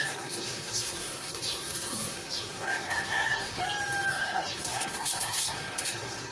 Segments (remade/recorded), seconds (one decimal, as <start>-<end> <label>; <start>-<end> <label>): 0.0-3.6 remade; 3.6-4.1 recorded; 4.1-6.3 remade